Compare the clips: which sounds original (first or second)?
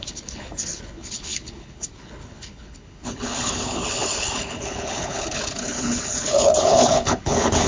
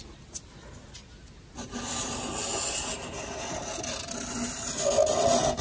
second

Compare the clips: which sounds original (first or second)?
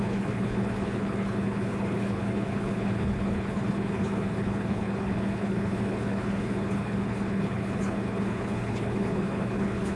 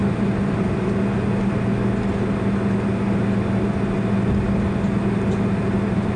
second